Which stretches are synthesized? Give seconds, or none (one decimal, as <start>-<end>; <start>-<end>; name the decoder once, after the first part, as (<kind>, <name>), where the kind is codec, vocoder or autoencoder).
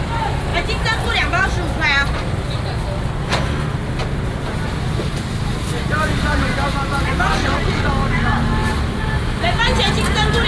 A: 7.4-7.9 (vocoder, WaveNeXt)